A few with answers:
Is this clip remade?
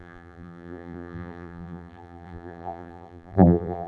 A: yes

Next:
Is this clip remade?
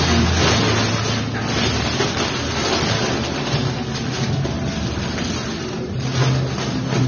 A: no